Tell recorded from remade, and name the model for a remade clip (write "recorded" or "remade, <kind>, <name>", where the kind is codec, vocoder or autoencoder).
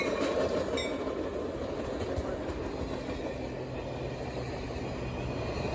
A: recorded